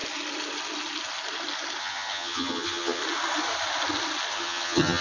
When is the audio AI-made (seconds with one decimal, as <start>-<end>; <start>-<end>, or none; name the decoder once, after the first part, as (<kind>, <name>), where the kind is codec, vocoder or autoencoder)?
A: 1.8-3.0 (vocoder, HiFi-GAN); 4.3-5.0